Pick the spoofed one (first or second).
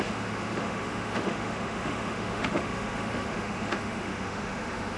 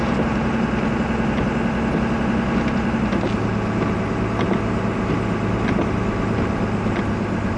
first